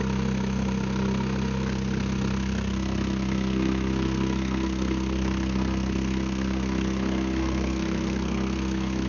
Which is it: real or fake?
fake